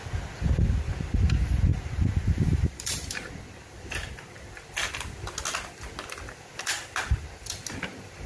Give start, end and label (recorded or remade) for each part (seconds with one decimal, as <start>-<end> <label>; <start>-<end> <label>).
0.0-1.7 recorded; 1.7-3.3 remade; 3.3-8.3 recorded

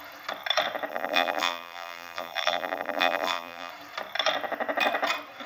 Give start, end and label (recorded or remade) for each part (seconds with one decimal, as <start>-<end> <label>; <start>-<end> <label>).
0.0-0.9 recorded; 0.9-3.7 remade; 3.7-5.5 recorded

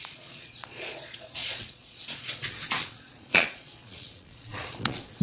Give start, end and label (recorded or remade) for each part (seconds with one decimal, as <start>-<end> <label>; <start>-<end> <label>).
0.0-5.2 remade

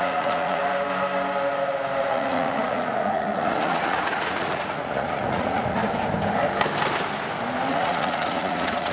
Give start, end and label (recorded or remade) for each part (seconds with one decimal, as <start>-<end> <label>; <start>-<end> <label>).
0.0-0.6 remade; 0.6-2.0 recorded; 2.0-5.8 remade; 5.8-7.7 recorded; 7.7-8.9 remade

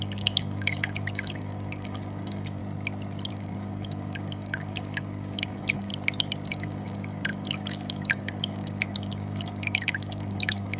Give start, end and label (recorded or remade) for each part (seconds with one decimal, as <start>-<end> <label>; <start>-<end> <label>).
0.0-2.6 remade; 2.6-3.3 recorded; 3.3-5.9 remade; 5.9-6.5 recorded; 6.5-10.8 remade

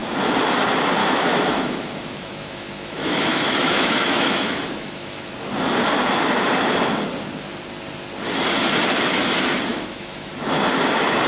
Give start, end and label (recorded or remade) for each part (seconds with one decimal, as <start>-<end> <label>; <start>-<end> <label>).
0.0-1.0 recorded; 1.0-5.3 remade; 5.3-9.7 recorded; 9.7-10.3 remade; 10.3-11.3 recorded

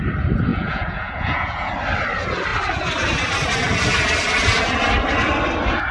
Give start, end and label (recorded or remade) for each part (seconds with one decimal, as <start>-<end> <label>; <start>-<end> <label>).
0.0-0.5 recorded; 0.5-1.7 remade; 1.7-5.9 recorded

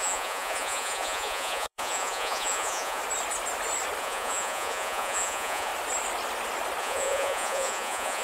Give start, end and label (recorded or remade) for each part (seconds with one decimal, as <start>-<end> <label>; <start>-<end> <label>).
0.0-3.0 remade; 3.0-4.0 recorded; 4.0-5.7 remade; 5.7-6.8 recorded; 6.8-8.2 remade